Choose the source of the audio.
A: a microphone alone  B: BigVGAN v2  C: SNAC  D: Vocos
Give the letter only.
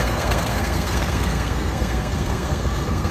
C